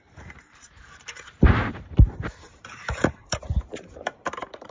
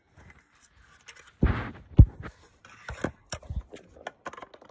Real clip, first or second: second